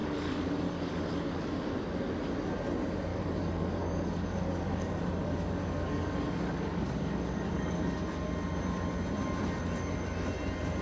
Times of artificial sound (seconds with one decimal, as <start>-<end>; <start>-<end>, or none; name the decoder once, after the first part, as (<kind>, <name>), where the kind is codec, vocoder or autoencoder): 0.0-1.3 (codec, DAC); 3.1-7.8